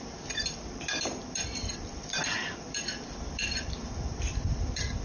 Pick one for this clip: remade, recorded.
remade